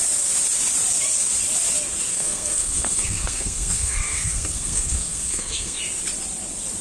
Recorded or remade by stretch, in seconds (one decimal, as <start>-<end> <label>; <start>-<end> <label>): 0.0-2.1 recorded; 2.1-5.8 remade; 5.8-6.8 recorded